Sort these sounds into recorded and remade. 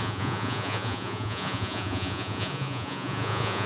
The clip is remade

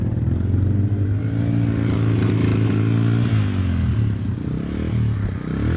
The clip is recorded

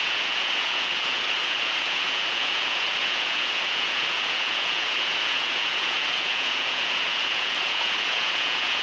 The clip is remade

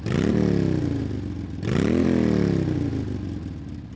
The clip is recorded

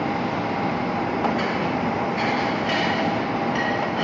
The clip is recorded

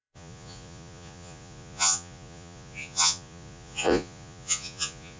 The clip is remade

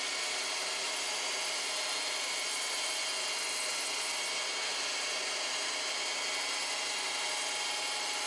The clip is recorded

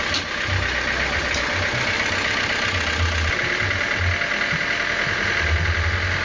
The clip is recorded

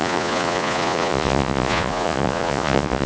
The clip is remade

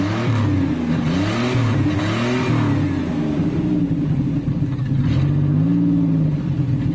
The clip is recorded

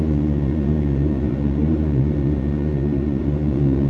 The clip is remade